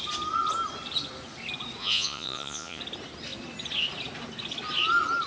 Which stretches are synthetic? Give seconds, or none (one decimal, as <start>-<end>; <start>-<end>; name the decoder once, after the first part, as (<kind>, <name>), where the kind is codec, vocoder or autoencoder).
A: 1.8-2.8 (vocoder, Vocos)